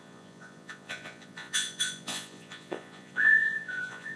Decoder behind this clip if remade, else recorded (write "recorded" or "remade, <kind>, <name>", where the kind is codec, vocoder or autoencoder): remade, vocoder, Vocos